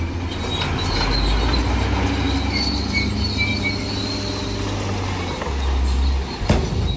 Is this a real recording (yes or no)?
yes